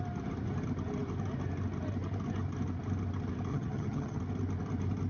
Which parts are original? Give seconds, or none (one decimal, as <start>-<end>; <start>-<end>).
0.0-3.5; 4.2-5.1